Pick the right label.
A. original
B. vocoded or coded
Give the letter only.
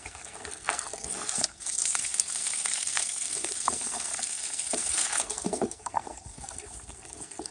B